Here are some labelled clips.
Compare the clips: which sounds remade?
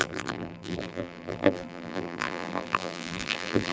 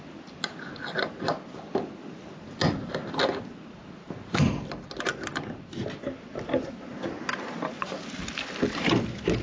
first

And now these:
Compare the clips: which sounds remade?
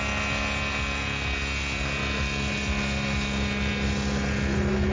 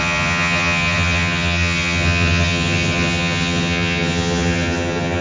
second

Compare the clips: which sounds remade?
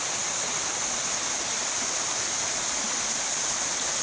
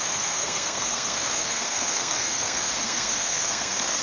second